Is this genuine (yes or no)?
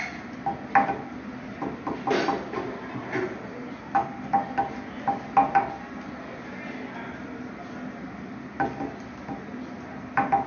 yes